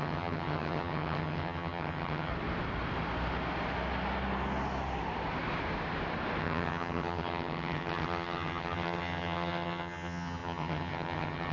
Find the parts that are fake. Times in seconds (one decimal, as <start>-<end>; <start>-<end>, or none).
0.0-2.3; 6.4-11.5